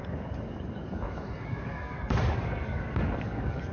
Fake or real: fake